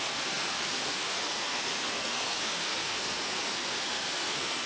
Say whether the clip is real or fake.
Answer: fake